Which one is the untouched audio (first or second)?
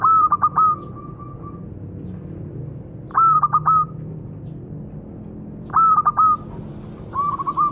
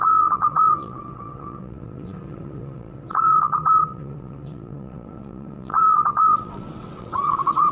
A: first